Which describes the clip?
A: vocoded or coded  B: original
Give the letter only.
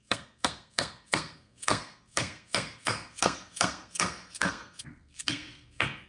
A